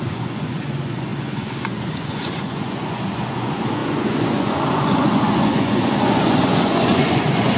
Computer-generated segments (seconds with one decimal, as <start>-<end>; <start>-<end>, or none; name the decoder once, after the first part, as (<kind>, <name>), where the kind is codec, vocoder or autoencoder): 0.0-7.6 (vocoder, Vocos)

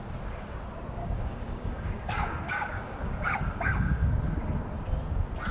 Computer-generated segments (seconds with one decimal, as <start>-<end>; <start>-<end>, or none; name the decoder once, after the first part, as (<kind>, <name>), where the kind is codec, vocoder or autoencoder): 1.0-4.1 (codec, DAC)